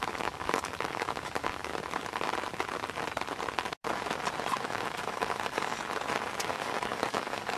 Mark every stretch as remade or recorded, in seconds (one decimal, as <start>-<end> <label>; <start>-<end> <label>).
0.0-1.7 remade; 1.7-4.6 recorded; 4.6-5.7 remade; 5.7-6.4 recorded; 6.4-7.6 remade